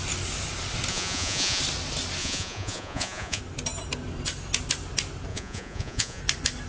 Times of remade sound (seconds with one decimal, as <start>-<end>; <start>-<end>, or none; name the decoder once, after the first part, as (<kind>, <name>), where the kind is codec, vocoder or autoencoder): 0.9-1.6 (vocoder, Vocos); 2.2-3.4; 5.3-6.2

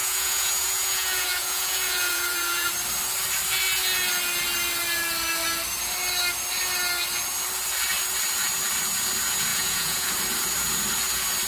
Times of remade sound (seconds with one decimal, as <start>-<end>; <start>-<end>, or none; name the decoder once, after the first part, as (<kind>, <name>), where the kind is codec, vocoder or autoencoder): 0.0-2.7 (vocoder, Vocos); 9.5-10.1

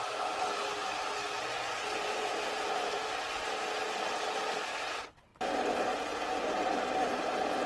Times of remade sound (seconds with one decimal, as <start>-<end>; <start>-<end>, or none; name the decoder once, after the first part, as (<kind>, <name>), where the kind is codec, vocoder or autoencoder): 1.5-2.3 (vocoder, Vocos)

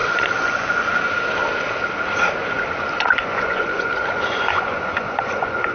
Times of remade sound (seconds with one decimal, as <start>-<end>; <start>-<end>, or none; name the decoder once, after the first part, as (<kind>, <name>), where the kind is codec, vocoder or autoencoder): 0.0-1.0 (vocoder, Vocos); 2.4-5.7

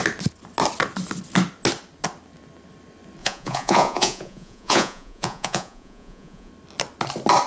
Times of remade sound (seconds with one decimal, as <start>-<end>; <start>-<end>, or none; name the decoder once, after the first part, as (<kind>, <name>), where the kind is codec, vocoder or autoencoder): 3.2-6.5 (vocoder, Vocos)

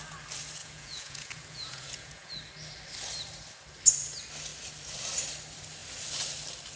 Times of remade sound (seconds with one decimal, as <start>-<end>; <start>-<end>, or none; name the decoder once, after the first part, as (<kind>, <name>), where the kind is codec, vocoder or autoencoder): 0.6-2.4 (vocoder, Vocos)

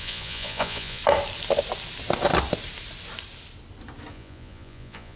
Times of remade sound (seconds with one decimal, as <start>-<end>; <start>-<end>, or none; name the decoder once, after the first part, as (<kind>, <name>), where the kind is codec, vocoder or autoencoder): 0.0-1.0 (vocoder, Vocos); 4.1-5.2